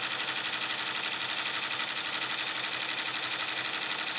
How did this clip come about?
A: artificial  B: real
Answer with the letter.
B